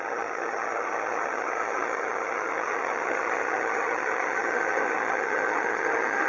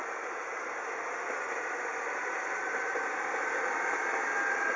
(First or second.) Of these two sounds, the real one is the second